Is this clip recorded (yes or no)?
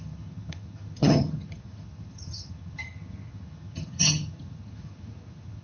no